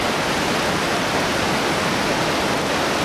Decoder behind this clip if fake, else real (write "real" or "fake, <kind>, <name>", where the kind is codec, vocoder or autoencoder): real